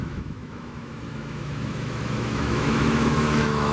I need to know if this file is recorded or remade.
remade